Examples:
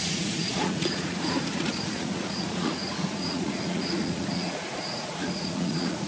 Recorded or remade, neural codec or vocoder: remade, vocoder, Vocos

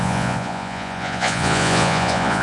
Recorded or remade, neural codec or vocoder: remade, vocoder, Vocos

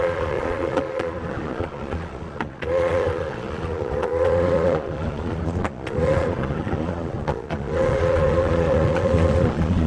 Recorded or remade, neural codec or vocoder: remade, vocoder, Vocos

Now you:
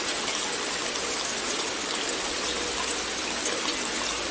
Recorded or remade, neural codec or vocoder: recorded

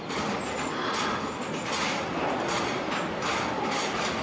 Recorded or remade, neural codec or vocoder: recorded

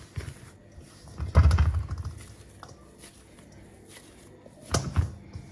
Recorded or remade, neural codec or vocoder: recorded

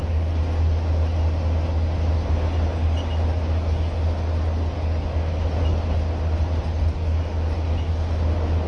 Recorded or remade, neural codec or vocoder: recorded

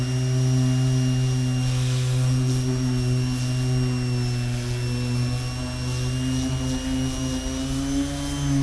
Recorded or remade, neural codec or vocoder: recorded